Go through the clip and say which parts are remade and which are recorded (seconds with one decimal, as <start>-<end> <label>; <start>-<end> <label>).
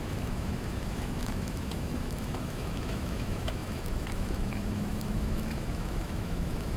0.0-6.8 remade